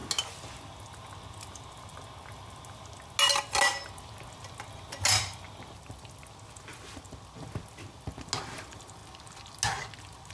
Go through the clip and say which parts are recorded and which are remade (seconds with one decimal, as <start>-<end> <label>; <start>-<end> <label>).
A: 0.0-10.3 recorded